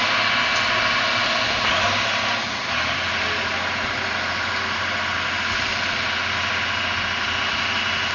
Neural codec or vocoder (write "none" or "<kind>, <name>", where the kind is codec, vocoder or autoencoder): none